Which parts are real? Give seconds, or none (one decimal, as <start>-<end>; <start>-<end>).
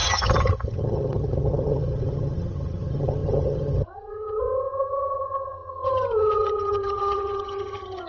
none